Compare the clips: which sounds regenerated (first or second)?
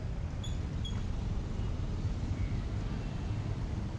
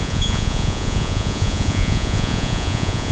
second